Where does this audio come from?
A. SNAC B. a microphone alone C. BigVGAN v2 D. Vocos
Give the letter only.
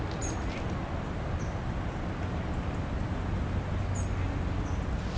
B